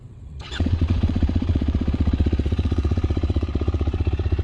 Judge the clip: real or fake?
fake